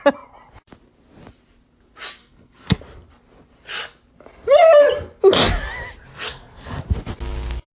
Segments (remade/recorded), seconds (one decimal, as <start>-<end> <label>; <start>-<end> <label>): 0.0-2.2 recorded; 2.2-2.8 remade; 2.8-6.1 recorded; 6.1-6.8 remade; 6.8-7.7 recorded